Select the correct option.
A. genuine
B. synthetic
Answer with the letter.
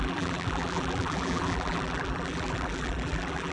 B